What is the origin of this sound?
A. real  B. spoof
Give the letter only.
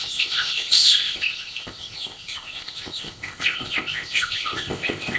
B